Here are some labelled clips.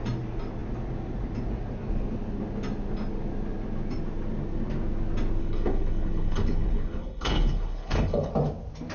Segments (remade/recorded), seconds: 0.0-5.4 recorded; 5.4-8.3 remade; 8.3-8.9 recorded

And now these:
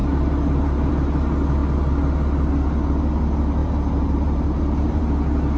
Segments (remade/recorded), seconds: 0.0-0.9 remade; 0.9-3.6 recorded; 3.6-5.0 remade; 5.0-5.6 recorded

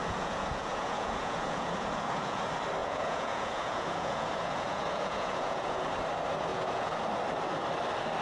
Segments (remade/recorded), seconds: 0.0-2.4 remade; 2.4-2.8 recorded; 2.8-5.8 remade; 5.8-6.5 recorded; 6.5-7.0 remade; 7.0-8.2 recorded

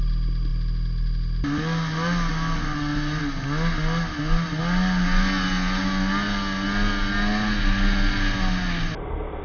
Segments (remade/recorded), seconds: 0.0-9.4 recorded

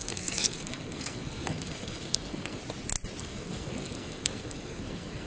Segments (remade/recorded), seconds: 0.0-2.6 remade; 2.6-3.2 recorded; 3.2-5.3 remade

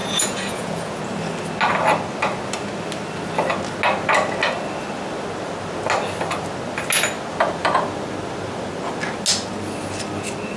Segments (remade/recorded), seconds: 0.0-1.0 remade; 1.0-10.6 recorded

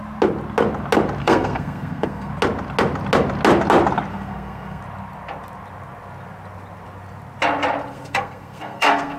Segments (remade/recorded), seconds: 0.0-1.2 recorded; 1.2-2.3 remade; 2.3-4.1 recorded; 4.1-4.8 remade; 4.8-7.9 recorded; 7.9-9.2 remade

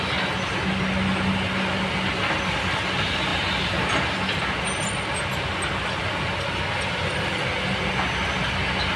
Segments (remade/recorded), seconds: 0.0-9.0 recorded